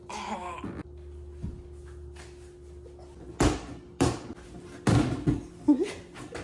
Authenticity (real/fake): real